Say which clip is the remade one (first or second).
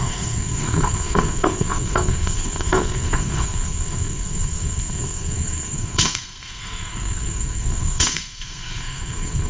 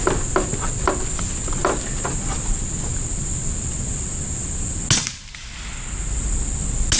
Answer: first